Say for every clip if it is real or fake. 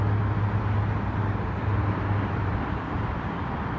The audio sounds real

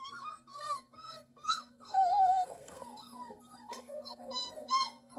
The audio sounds fake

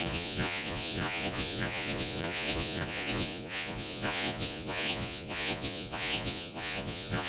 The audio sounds fake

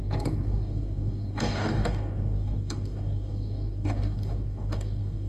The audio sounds fake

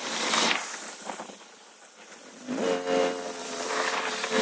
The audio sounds real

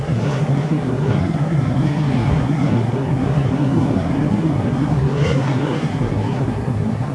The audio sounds fake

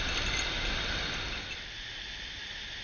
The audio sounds real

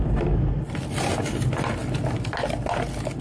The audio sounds real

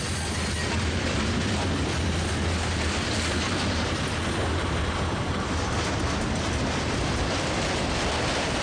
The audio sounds real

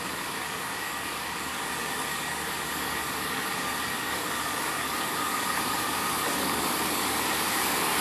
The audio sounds fake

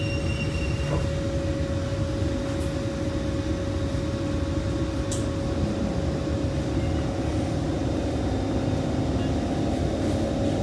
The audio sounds real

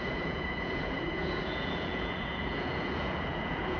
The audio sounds fake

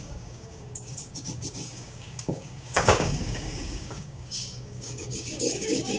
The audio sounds fake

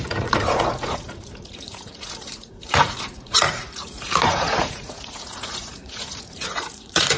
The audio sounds fake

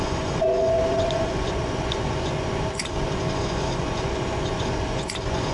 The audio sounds fake